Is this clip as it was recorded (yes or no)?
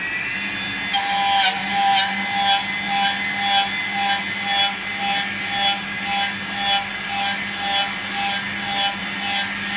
yes